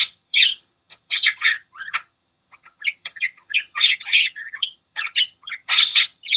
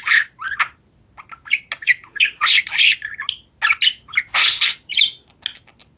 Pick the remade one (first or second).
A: first